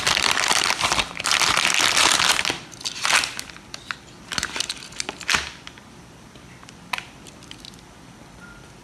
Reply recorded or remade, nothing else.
remade